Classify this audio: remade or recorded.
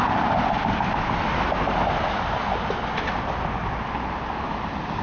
recorded